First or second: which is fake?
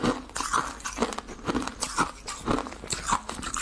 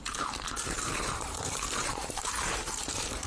second